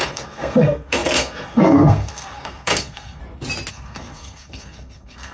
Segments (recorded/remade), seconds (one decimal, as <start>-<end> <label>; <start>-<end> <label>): 0.0-3.2 remade; 3.2-3.7 recorded; 3.7-5.3 remade